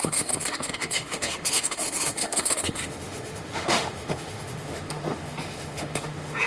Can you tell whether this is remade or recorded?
remade